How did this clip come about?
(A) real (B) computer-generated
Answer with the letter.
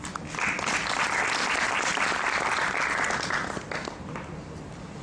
A